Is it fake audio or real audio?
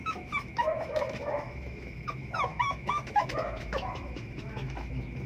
fake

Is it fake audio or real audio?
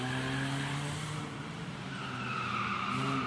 real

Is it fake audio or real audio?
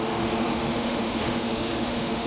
fake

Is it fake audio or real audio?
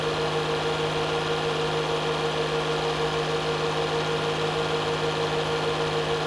real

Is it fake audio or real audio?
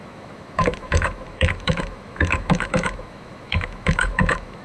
fake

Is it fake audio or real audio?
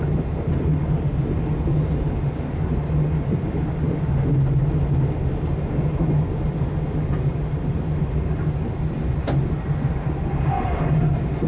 real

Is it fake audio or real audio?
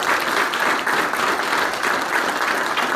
real